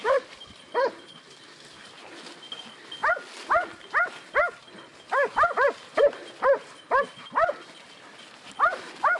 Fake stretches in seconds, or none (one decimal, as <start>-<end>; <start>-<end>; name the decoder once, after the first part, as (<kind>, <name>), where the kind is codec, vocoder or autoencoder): none